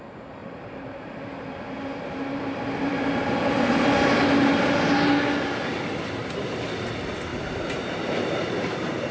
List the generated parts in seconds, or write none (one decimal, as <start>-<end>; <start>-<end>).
0.4-2.9; 7.3-9.1